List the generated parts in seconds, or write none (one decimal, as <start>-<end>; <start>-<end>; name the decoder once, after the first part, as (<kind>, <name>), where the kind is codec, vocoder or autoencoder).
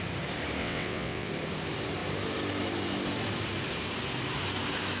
0.6-1.3 (vocoder, WaveNeXt)